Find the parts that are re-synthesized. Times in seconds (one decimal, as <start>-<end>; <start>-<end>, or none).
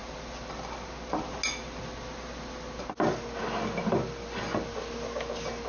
none